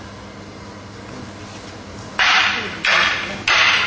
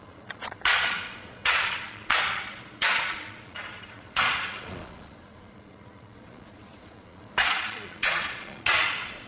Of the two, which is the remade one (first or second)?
second